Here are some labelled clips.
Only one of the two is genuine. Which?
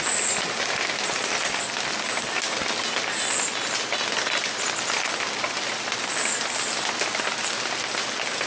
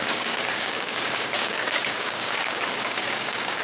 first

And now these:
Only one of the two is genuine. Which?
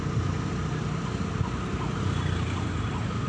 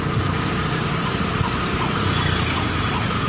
first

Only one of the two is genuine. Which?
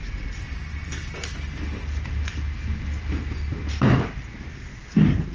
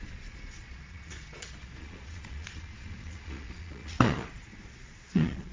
first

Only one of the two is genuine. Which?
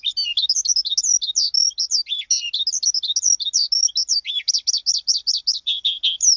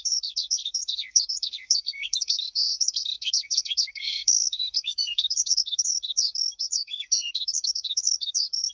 first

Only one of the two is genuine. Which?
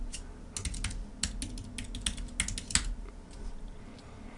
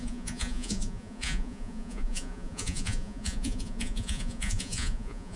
first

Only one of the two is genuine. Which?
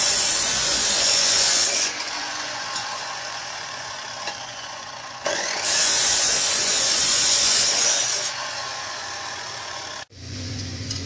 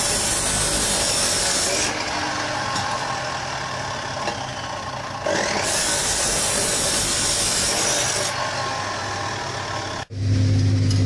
second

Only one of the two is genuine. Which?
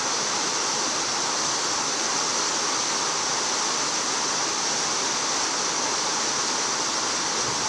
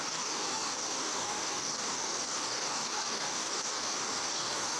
first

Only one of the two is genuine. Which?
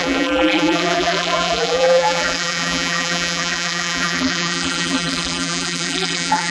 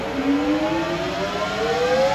second